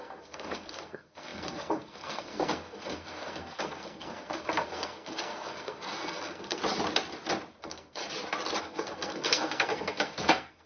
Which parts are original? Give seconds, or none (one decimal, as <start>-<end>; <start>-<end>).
6.6-7.6; 8.0-8.6